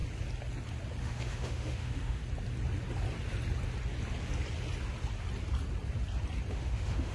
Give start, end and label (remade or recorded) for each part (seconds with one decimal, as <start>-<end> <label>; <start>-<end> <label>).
0.0-1.0 recorded; 1.0-2.2 remade; 2.2-6.5 recorded; 6.5-7.1 remade